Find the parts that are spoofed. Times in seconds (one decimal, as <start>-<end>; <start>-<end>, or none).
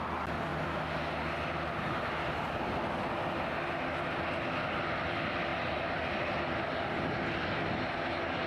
none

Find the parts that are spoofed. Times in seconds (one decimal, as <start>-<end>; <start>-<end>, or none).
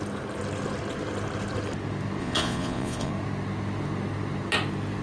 2.2-3.1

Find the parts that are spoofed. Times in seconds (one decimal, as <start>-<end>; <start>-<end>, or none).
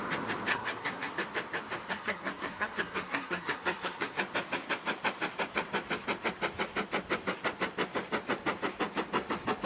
0.5-1.1; 1.9-4.2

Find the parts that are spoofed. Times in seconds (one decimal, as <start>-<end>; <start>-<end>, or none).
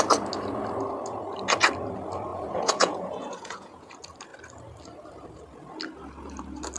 2.3-3.9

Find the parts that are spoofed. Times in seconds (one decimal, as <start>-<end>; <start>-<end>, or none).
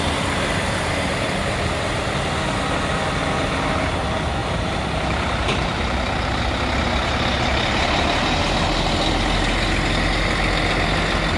4.4-6.4